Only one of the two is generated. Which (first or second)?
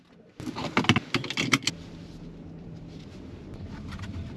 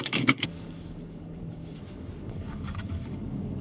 second